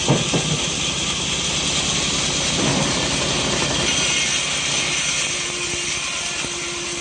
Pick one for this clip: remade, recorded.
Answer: recorded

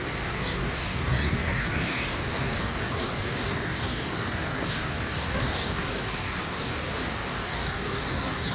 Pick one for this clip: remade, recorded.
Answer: remade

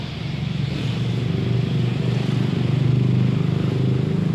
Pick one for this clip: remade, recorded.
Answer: recorded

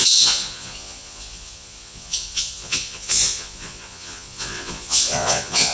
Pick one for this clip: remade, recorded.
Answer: remade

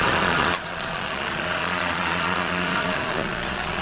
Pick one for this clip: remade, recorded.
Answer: remade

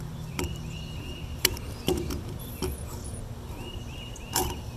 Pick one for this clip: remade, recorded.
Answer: remade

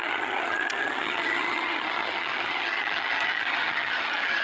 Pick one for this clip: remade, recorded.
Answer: remade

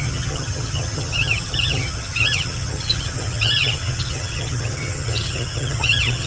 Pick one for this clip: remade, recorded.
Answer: remade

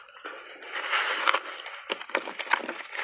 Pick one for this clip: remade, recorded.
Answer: recorded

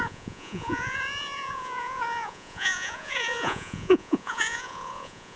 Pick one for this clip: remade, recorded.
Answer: remade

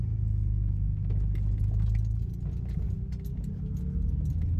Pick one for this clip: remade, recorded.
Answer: recorded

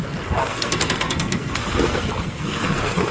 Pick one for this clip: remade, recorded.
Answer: remade